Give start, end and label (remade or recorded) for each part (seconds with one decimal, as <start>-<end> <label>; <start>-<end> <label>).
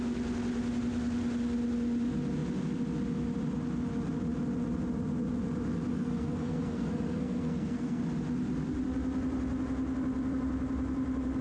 0.0-5.9 recorded; 5.9-8.0 remade; 8.0-11.4 recorded